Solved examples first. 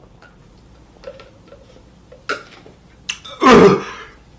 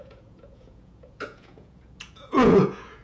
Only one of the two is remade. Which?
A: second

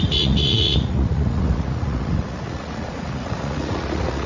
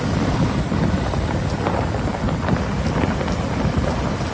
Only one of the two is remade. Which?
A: first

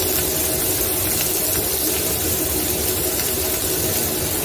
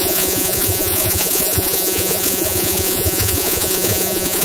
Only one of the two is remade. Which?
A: second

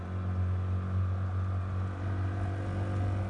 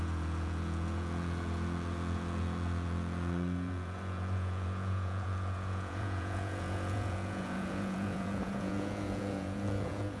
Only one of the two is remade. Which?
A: second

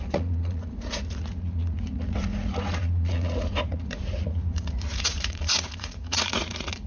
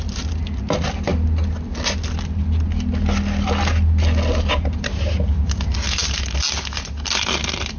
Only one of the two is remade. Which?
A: first